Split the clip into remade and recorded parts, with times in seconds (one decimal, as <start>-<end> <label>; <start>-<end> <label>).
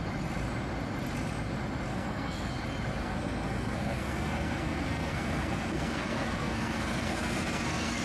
0.0-1.9 recorded; 1.9-2.5 remade; 2.5-3.0 recorded; 3.0-8.0 remade